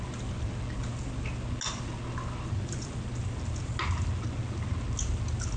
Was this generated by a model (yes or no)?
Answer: no